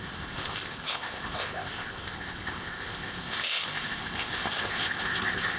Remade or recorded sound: remade